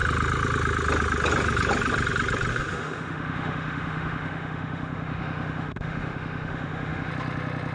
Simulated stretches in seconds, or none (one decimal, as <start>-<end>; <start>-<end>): 2.5-7.1